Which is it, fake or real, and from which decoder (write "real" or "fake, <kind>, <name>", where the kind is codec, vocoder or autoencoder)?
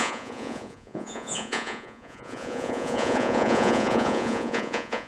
fake, vocoder, Vocos